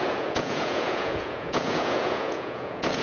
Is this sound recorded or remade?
remade